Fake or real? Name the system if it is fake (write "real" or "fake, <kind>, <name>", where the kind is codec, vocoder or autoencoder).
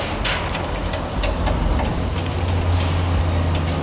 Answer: real